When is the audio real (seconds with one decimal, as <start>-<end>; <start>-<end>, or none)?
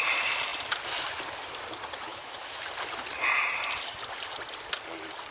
0.0-2.1; 2.6-5.3